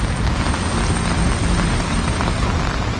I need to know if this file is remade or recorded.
recorded